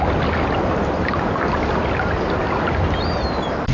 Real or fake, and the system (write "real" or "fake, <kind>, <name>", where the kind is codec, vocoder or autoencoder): real